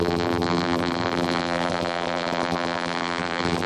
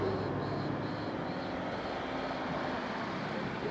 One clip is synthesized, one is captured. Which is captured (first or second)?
second